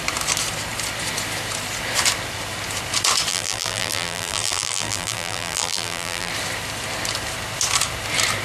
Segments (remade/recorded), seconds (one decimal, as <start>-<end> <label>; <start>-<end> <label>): 0.0-3.3 recorded; 3.3-6.3 remade; 6.3-8.4 recorded